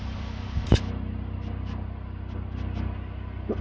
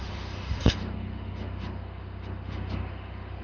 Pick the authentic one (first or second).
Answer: first